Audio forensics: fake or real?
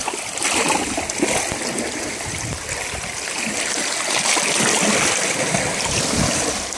real